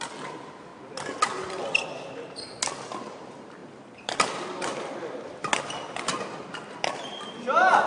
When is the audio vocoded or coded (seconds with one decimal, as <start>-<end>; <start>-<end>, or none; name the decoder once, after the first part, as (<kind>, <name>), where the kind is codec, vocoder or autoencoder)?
0.0-0.7 (vocoder, BigVGAN v2); 2.5-7.9